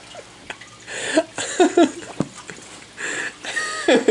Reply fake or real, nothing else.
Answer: real